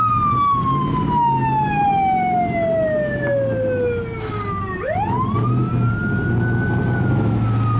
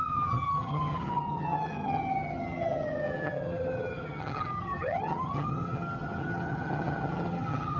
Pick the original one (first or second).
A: first